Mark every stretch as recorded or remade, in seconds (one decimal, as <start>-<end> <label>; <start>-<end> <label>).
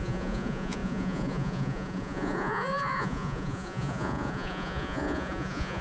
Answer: 0.0-5.8 remade